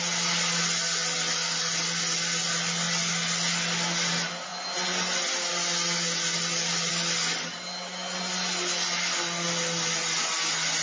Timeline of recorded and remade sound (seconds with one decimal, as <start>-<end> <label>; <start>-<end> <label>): 0.0-10.8 recorded